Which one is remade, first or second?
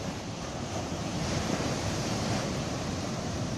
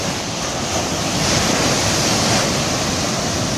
first